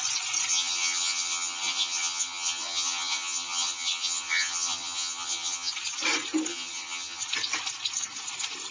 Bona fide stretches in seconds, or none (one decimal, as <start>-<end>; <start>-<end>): 0.0-0.5; 5.7-6.5; 7.2-8.7